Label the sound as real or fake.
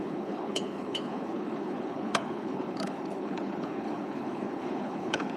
fake